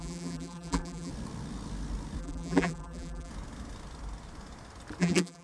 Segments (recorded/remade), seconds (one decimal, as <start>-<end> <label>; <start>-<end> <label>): 0.0-1.1 remade; 1.1-2.2 recorded; 2.2-3.3 remade; 3.3-5.0 recorded; 5.0-5.4 remade